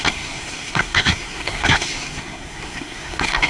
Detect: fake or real fake